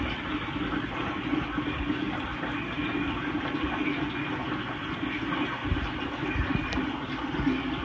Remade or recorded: recorded